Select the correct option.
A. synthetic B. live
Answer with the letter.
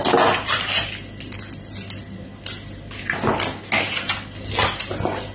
B